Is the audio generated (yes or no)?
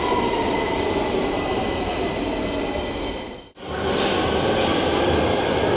no